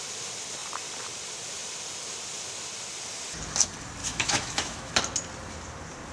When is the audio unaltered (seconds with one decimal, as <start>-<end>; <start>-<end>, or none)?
0.0-4.0; 4.9-6.1